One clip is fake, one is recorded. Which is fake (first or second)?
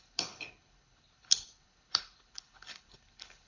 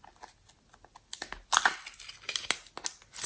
first